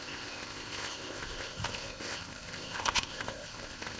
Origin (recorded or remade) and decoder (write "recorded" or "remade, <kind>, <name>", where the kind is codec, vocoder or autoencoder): remade, codec, ZipCodec